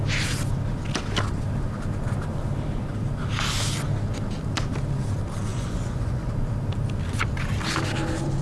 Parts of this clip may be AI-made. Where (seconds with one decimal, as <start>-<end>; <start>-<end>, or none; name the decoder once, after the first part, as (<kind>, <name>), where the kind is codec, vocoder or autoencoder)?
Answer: 5.5-6.3 (vocoder, Vocos)